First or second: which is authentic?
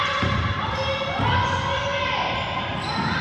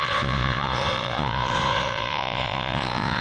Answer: first